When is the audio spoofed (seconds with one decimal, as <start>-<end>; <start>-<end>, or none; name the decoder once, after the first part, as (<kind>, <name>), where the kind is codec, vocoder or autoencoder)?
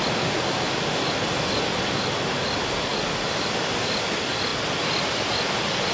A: none